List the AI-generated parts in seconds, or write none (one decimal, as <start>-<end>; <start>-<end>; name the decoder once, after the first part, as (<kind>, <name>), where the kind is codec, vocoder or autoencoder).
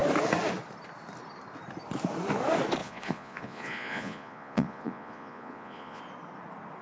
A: 2.8-6.0 (vocoder, Vocos)